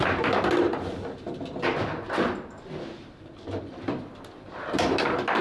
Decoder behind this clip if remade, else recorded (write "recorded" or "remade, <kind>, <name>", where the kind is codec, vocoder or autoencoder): recorded